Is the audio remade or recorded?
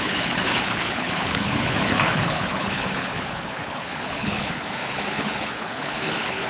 remade